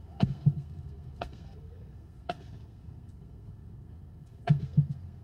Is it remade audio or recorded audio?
remade